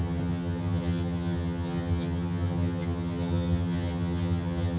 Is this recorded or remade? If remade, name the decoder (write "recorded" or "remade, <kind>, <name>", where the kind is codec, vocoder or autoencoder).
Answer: remade, vocoder, HiFi-GAN